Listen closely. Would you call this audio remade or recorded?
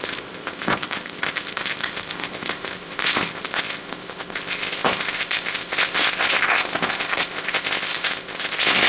remade